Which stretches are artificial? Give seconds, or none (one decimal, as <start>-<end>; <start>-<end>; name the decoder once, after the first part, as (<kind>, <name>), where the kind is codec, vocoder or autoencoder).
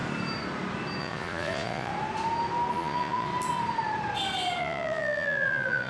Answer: 1.0-1.9 (vocoder, Vocos); 2.7-3.3; 4.6-5.9